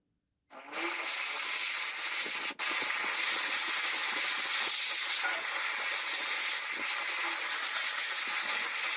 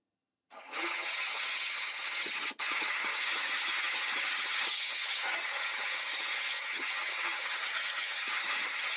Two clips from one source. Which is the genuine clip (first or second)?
first